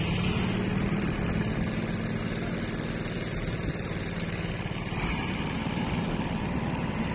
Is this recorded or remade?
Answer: recorded